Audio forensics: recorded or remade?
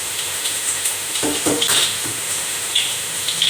remade